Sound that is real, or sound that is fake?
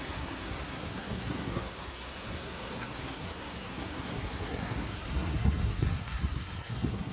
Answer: fake